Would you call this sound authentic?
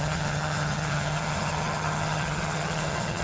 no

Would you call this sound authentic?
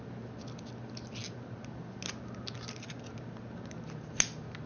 yes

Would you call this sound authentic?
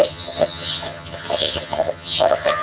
no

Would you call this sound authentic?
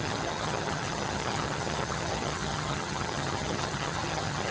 no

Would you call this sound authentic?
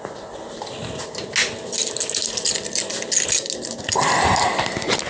yes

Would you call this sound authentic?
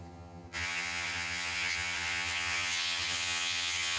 no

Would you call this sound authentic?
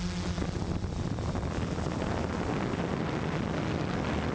yes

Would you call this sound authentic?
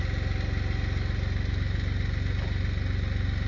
yes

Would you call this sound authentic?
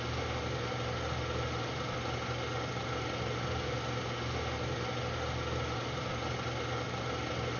yes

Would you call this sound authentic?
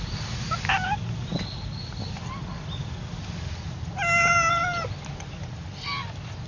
yes